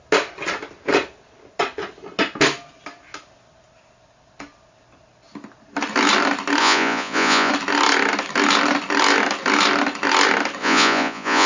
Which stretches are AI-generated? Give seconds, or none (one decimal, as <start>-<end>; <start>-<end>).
6.6-7.5; 10.6-11.5